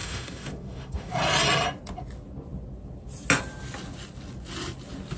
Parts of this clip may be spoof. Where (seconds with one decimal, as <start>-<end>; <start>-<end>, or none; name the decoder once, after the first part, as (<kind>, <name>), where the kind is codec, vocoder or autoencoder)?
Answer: 0.0-1.1 (autoencoder, DAC-VAE)